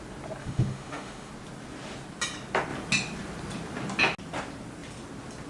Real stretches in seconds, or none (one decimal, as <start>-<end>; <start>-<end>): 0.0-0.4; 1.3-5.5